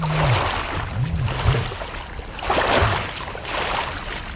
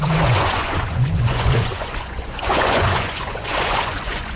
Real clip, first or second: first